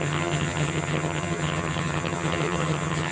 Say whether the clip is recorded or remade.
remade